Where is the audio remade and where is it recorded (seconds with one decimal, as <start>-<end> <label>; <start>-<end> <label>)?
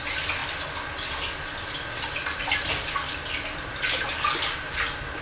0.0-5.2 recorded